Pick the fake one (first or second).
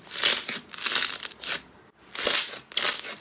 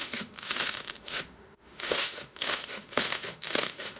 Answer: second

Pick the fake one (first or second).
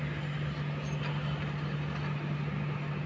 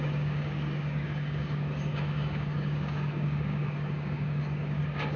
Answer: second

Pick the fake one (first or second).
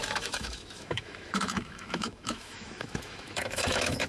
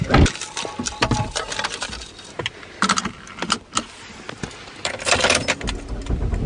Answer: first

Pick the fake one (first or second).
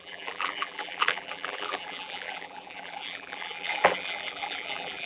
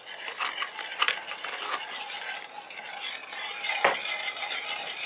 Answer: first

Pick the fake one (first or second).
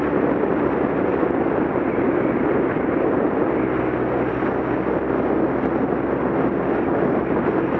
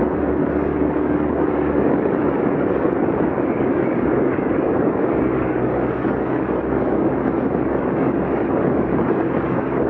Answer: second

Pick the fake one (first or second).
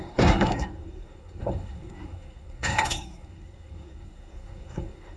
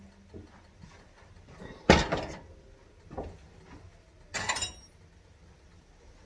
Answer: first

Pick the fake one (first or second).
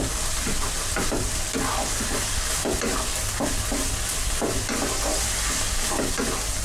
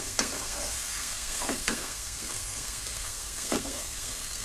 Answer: second